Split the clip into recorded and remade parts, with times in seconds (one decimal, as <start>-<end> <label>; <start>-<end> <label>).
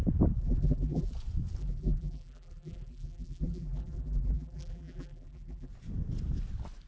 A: 0.0-0.4 recorded; 0.4-1.1 remade; 1.1-1.6 recorded; 1.6-5.7 remade; 5.7-6.9 recorded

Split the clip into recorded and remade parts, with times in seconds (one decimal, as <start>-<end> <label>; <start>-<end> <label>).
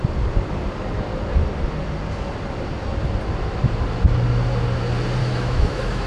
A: 0.0-5.2 recorded; 5.2-6.1 remade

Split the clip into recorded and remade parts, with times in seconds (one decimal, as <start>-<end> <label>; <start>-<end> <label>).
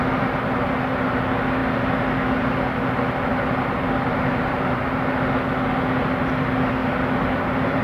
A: 0.0-3.3 recorded; 3.3-4.8 remade; 4.8-6.8 recorded; 6.8-7.8 remade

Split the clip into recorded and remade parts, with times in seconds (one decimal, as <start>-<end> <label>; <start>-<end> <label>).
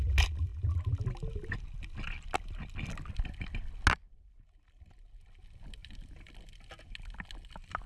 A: 0.0-5.8 recorded; 5.8-6.3 remade; 6.3-7.9 recorded